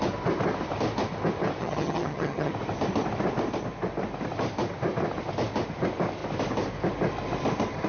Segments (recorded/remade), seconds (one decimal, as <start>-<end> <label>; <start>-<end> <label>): 0.0-1.6 recorded; 1.6-2.5 remade; 2.5-7.9 recorded